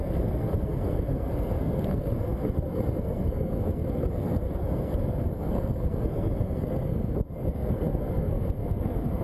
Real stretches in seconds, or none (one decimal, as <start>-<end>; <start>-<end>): none